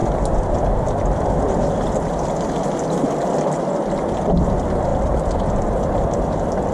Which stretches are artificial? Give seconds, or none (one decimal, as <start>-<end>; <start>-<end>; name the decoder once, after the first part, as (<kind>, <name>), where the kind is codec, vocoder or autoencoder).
none